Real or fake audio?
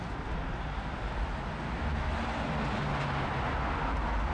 real